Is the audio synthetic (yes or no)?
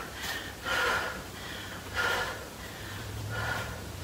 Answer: yes